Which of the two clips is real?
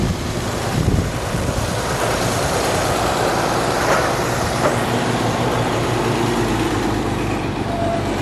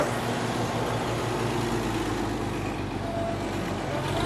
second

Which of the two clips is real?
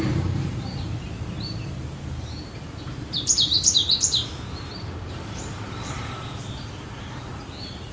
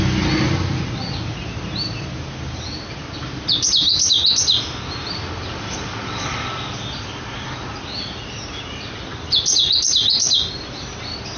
second